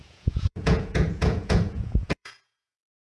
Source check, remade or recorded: remade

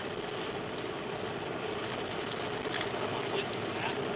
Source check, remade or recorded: recorded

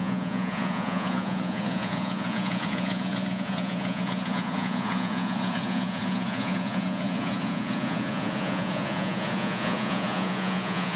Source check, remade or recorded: remade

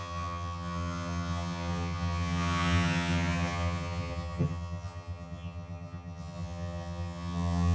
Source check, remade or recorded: remade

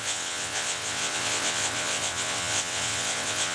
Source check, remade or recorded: remade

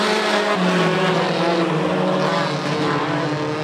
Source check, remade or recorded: recorded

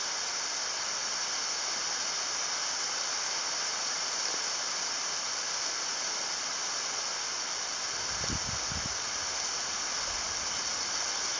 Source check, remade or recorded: recorded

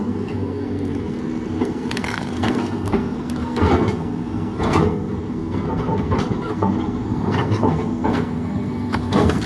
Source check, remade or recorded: remade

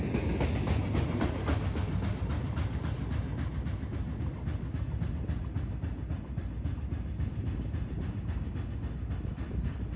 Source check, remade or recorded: recorded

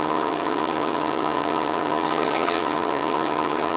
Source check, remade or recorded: remade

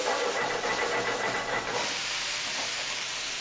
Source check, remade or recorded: remade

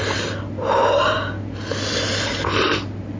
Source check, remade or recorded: recorded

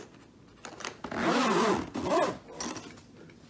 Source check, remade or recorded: recorded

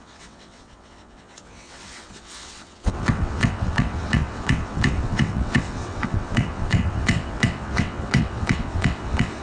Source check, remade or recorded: remade